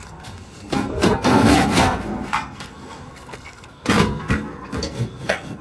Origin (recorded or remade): remade